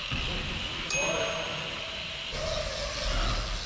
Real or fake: real